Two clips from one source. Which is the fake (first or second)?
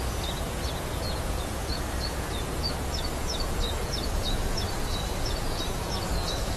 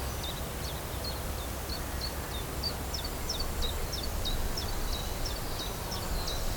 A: first